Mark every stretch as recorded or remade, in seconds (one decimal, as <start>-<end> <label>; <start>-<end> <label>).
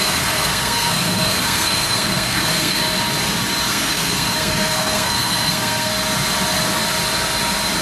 0.0-2.8 remade; 2.8-3.7 recorded; 3.7-5.9 remade; 5.9-7.8 recorded